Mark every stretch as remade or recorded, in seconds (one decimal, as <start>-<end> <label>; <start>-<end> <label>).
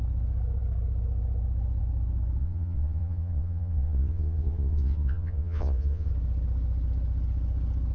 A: 0.0-2.4 recorded; 2.4-6.1 remade; 6.1-7.9 recorded